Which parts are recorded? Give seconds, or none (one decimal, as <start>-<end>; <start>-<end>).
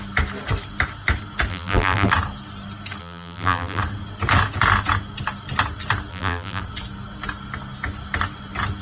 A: 0.0-1.5; 2.1-3.0; 3.8-6.1; 6.6-8.8